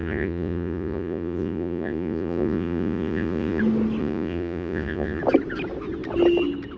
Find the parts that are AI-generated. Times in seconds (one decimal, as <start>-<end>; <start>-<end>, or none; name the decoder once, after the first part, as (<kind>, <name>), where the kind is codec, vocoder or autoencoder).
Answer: 0.0-3.6 (vocoder, Vocos); 4.0-5.2